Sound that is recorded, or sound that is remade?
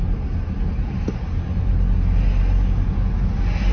recorded